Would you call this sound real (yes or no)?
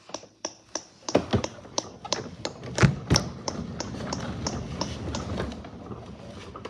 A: yes